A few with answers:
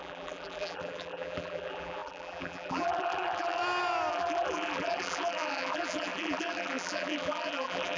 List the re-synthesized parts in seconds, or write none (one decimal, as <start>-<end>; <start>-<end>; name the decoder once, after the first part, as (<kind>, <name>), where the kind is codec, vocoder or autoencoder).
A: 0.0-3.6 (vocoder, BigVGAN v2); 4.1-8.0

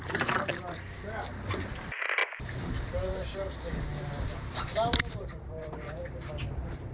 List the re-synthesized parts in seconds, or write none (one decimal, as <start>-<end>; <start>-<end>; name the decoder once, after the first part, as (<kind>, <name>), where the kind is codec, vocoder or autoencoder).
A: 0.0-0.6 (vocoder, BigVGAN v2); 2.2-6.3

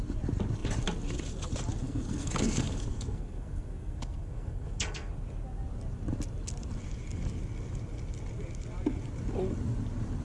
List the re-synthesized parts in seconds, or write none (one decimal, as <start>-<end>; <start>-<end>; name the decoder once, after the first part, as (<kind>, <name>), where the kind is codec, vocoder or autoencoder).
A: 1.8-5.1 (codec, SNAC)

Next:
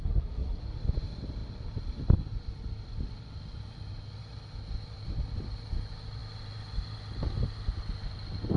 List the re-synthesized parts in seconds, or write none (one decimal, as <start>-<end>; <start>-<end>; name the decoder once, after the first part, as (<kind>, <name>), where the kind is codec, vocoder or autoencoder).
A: 0.0-0.6 (codec, SNAC)

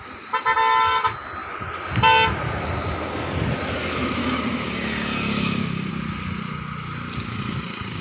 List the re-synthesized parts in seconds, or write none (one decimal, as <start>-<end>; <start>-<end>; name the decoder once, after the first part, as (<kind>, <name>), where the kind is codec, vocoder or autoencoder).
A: 4.2-5.9 (codec, DAC)

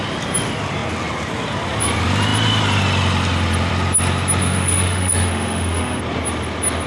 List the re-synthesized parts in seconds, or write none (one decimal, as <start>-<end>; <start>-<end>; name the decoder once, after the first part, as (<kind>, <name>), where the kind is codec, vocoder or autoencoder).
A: 4.4-6.0 (autoencoder, DAC-VAE)